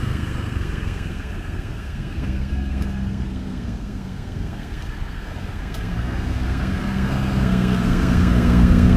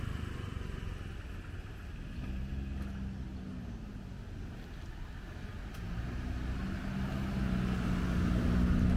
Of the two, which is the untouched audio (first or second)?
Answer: second